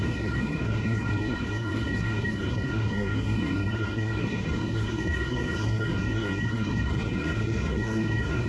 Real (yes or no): no